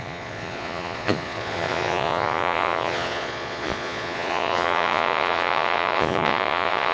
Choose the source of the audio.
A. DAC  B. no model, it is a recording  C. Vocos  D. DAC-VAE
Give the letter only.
C